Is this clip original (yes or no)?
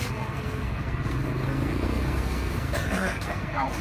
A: no